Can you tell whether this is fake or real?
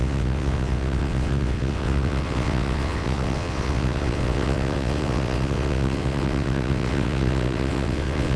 fake